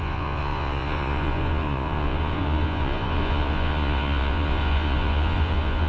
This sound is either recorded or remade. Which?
remade